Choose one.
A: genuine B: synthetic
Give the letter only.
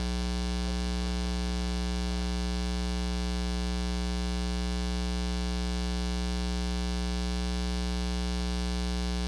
A